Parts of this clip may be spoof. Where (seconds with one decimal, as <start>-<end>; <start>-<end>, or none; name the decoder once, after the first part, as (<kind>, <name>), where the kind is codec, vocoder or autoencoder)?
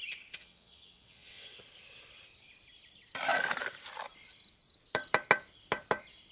0.4-1.6 (vocoder, WaveNeXt)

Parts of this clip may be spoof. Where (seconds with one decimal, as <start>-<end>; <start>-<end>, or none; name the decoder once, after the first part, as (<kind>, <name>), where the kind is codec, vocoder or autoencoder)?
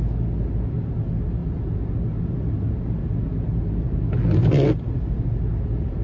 none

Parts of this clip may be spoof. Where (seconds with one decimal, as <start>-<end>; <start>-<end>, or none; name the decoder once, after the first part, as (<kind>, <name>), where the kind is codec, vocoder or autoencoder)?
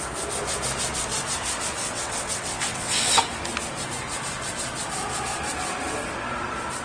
1.8-3.2 (vocoder, WaveNeXt)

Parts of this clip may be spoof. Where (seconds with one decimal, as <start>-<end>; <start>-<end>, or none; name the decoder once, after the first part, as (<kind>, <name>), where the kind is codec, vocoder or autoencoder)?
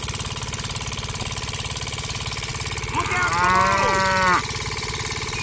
none